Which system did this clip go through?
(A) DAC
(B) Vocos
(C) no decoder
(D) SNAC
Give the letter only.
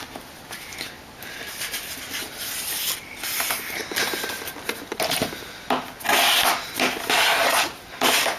C